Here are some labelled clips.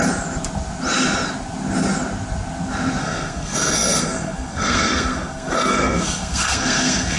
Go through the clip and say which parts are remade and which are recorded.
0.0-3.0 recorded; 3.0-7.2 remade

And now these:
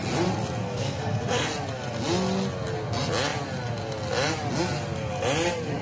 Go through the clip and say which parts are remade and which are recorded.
0.0-0.6 recorded; 0.6-1.5 remade; 1.5-5.8 recorded

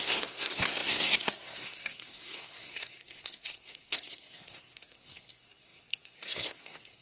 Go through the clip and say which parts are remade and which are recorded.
0.0-7.0 remade

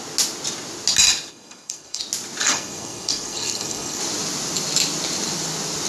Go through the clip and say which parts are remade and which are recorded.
0.0-1.3 recorded; 1.3-2.0 remade; 2.0-2.4 recorded; 2.4-4.0 remade; 4.0-5.9 recorded

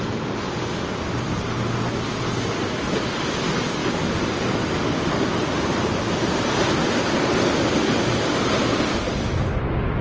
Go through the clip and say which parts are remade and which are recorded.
0.0-10.0 recorded

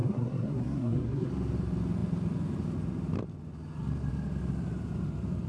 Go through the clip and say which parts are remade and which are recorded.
0.0-1.3 remade; 1.3-5.5 recorded

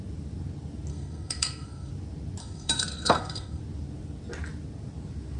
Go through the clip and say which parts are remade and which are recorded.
0.0-0.9 recorded; 0.9-1.9 remade; 1.9-2.4 recorded; 2.4-3.6 remade; 3.6-5.4 recorded

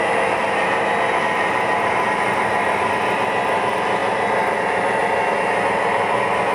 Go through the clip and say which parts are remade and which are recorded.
0.0-6.5 recorded